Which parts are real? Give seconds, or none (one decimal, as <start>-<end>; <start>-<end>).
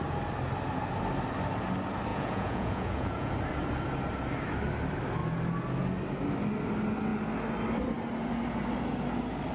0.0-2.1; 3.3-9.5